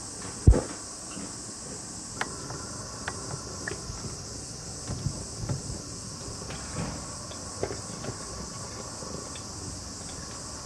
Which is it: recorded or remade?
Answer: recorded